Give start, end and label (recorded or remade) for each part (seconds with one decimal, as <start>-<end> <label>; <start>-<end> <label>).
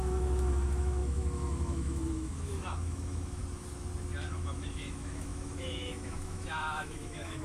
0.0-3.4 remade; 3.4-4.3 recorded; 4.3-7.4 remade